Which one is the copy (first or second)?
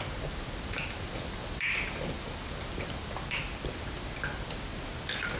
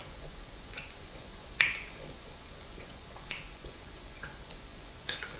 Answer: second